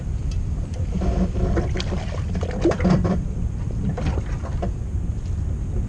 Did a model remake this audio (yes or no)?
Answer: yes